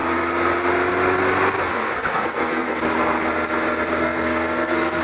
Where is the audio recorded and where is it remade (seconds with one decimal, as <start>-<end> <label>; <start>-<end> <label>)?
0.0-1.7 recorded; 1.7-2.8 remade; 2.8-4.0 recorded; 4.0-5.0 remade